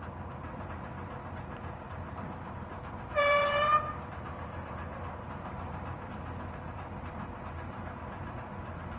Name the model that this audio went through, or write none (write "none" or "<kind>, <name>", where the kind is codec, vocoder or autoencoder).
vocoder, BigVGAN v2